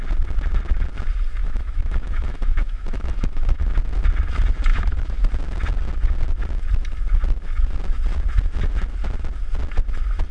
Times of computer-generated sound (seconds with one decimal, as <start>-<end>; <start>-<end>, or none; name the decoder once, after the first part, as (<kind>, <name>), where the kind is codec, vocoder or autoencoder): 1.4-3.7 (autoencoder, DAC-VAE); 4.7-5.3